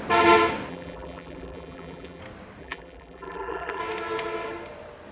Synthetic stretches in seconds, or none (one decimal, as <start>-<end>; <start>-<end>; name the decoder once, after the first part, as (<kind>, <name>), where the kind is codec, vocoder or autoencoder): 0.7-2.2 (vocoder, BigVGAN v2); 2.6-3.8